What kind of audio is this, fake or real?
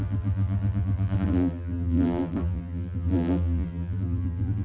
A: fake